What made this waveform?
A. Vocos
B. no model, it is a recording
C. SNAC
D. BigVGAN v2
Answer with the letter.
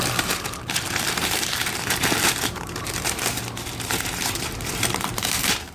D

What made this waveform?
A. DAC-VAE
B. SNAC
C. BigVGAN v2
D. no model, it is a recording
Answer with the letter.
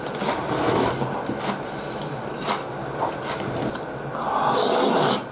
D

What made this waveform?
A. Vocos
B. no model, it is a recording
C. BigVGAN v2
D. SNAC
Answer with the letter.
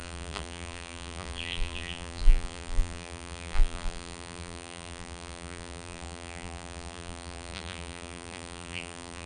C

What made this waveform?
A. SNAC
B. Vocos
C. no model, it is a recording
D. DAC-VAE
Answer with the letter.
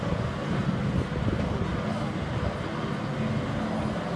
C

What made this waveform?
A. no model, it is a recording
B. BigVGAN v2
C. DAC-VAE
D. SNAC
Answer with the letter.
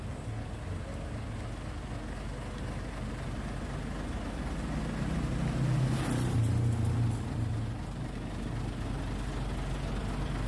A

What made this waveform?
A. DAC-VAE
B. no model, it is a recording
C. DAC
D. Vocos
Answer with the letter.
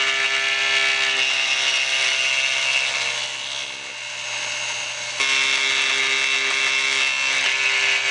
B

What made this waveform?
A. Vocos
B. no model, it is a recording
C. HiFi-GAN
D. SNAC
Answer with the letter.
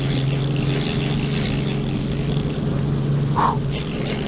B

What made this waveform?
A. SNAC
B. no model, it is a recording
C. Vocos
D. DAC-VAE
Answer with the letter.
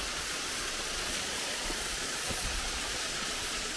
C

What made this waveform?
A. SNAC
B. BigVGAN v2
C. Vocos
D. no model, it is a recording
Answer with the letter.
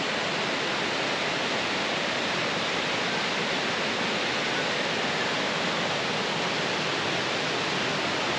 D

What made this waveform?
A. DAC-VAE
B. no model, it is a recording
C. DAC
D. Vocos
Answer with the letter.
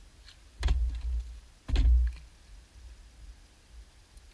B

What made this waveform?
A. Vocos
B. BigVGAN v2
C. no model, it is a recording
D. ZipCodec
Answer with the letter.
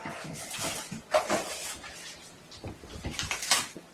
B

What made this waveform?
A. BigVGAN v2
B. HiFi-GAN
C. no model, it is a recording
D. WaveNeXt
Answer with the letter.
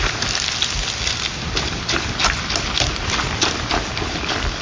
A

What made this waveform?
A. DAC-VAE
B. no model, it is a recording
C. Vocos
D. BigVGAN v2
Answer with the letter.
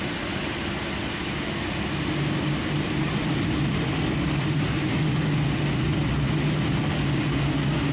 B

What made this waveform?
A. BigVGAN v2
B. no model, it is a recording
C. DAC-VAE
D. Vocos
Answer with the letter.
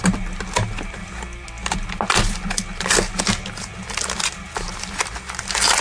B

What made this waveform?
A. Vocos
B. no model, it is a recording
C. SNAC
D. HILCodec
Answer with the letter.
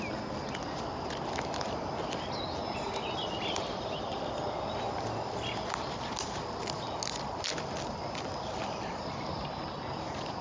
B